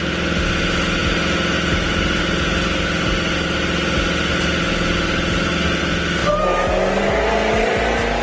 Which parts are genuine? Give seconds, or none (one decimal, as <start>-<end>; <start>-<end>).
0.0-8.2

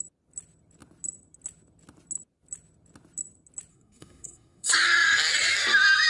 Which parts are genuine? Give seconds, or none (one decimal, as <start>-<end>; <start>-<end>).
0.0-3.7; 4.7-6.1

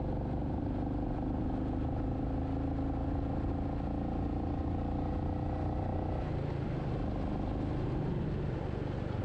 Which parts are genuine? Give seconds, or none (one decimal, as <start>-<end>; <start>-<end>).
0.0-9.2

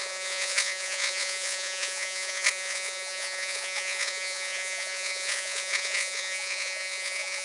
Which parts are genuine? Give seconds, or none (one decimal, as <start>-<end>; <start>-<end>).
none

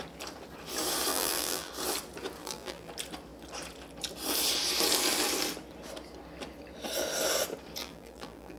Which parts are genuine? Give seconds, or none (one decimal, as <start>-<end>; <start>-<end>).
0.0-1.1; 1.7-2.4; 2.9-7.8